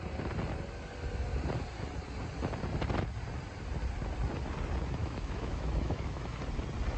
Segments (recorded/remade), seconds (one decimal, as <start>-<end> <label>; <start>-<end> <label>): 0.0-5.0 recorded; 5.0-6.4 remade; 6.4-7.0 recorded